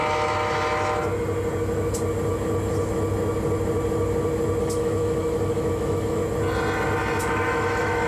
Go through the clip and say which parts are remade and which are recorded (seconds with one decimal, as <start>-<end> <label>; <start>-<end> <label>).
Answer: 0.0-4.6 recorded; 4.6-6.2 remade; 6.2-7.2 recorded; 7.2-8.1 remade